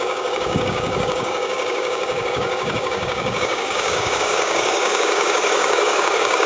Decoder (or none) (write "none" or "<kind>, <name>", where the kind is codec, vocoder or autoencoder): codec, DAC